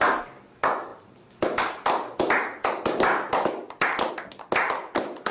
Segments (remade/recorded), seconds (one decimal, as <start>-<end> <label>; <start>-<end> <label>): 0.0-5.3 recorded